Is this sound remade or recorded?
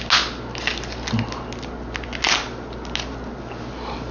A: recorded